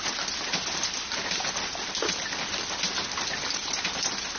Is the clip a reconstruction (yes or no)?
no